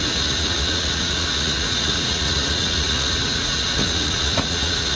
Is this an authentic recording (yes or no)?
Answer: no